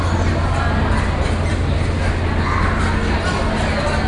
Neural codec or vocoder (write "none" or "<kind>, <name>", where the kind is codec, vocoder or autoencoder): none